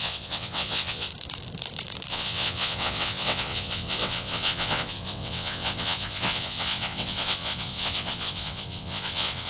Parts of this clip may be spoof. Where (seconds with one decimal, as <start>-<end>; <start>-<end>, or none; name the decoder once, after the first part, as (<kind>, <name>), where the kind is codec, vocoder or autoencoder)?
0.0-1.1 (vocoder, WaveNeXt); 2.1-9.5